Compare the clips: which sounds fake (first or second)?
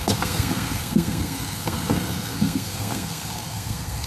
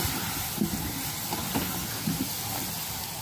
first